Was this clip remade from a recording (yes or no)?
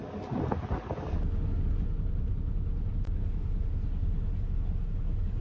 no